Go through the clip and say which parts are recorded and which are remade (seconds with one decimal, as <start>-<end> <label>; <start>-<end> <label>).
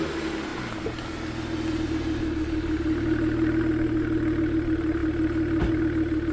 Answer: 0.0-6.3 recorded